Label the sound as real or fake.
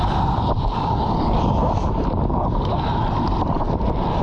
real